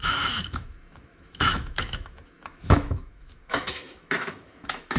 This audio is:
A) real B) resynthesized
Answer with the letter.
B